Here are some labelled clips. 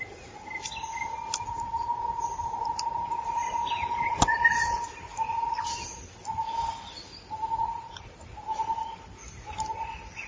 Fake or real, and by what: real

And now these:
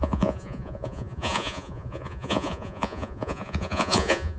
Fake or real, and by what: fake, vocoder, Vocos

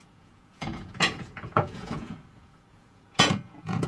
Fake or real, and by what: fake, vocoder, Vocos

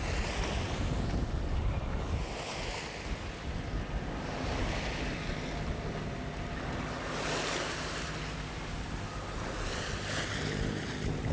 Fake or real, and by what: real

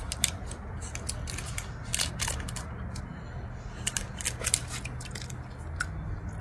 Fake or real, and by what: real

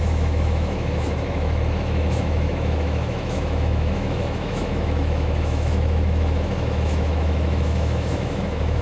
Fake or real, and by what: fake, autoencoder, DAC-VAE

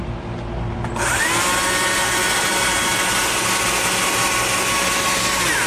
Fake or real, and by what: real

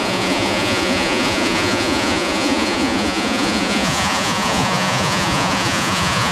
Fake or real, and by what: fake, vocoder, Vocos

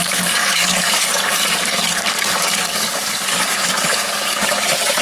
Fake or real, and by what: fake, codec, DAC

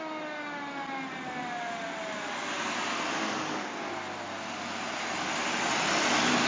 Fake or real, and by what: real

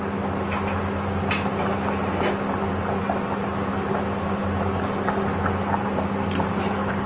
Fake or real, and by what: real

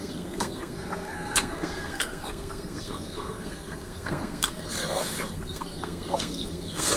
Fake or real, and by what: fake, codec, SNAC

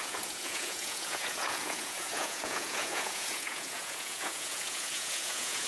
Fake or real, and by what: fake, vocoder, Vocos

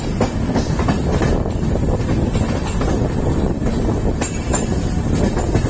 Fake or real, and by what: real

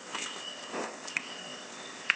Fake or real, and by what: fake, codec, ZipCodec